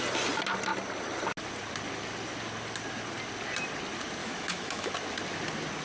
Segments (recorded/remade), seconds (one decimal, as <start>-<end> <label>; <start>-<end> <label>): 0.0-4.2 recorded; 4.2-4.9 remade; 4.9-5.8 recorded